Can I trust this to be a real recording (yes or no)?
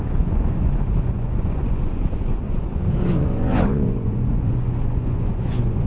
no